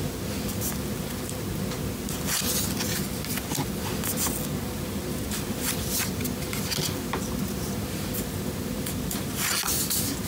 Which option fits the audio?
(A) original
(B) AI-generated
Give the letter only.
A